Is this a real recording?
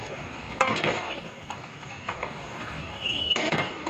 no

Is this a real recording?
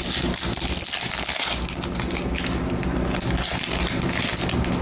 yes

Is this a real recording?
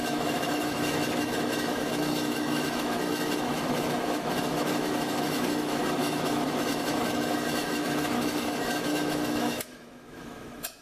no